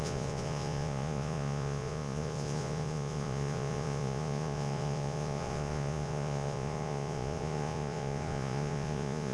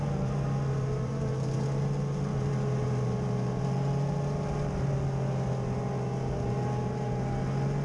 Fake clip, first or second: first